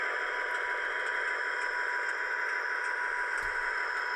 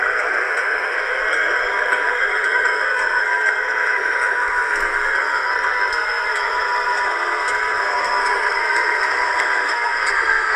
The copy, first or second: second